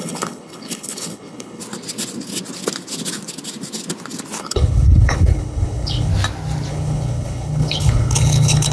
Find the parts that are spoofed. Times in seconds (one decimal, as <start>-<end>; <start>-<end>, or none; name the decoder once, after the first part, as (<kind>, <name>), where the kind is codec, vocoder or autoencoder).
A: 0.0-1.6 (codec, HILCodec); 4.4-6.1; 6.7-8.7